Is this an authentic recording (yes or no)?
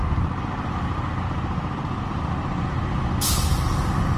yes